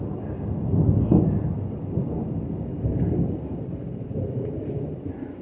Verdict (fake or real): real